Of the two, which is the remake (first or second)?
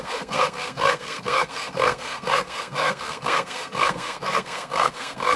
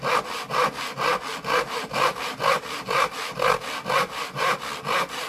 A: first